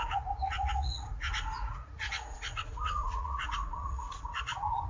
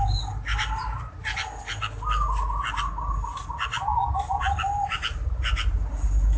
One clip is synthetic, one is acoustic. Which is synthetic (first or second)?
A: first